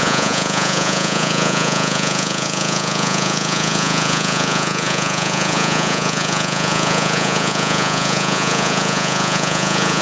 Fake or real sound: fake